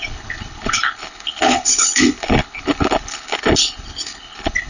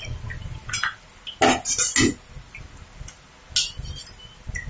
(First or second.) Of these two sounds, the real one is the second